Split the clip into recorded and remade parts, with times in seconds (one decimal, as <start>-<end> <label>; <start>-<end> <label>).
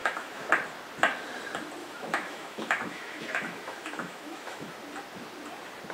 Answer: 0.0-0.5 remade; 0.5-1.8 recorded; 1.8-4.7 remade; 4.7-5.9 recorded